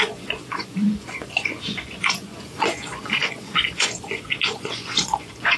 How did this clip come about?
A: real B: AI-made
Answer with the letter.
B